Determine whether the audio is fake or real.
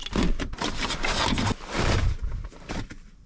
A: real